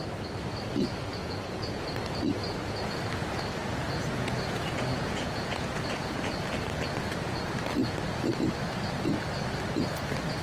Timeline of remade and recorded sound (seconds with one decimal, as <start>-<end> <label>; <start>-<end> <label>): 0.0-1.2 recorded; 1.2-1.7 remade; 1.7-3.6 recorded; 3.6-6.3 remade; 6.3-10.4 recorded